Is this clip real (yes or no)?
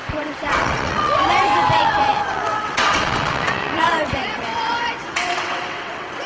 no